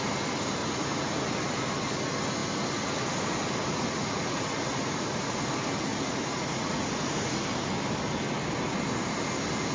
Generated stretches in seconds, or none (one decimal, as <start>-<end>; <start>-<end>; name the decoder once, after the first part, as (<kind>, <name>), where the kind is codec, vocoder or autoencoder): 0.6-1.2 (vocoder, Vocos); 3.6-5.5; 5.9-7.4